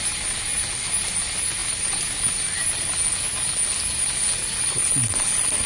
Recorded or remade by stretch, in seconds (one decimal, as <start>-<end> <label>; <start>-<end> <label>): 0.0-5.7 recorded